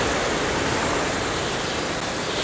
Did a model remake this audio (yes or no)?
no